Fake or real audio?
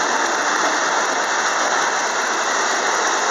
real